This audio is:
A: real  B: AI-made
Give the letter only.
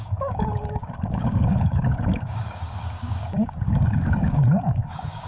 B